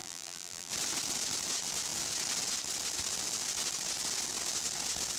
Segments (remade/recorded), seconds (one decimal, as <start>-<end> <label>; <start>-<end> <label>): 0.0-0.7 remade; 0.7-5.2 recorded